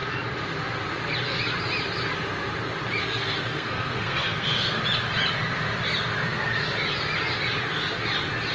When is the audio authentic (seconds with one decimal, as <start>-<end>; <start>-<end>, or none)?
0.0-3.0; 4.8-8.5